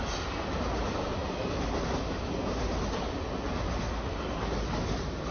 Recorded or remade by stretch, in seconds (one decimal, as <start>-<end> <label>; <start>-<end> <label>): 0.0-5.3 recorded